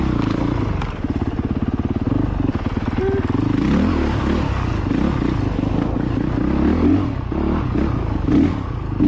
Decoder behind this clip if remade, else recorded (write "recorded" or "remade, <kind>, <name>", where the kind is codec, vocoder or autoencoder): recorded